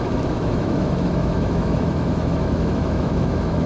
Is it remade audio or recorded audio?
remade